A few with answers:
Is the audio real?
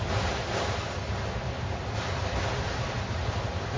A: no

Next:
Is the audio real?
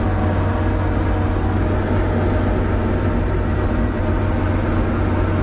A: yes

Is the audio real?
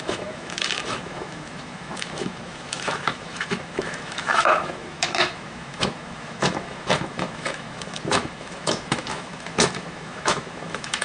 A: no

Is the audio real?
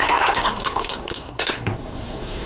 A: no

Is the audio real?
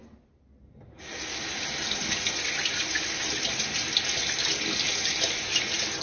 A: yes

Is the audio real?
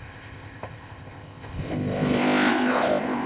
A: no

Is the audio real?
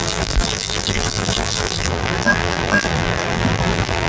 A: no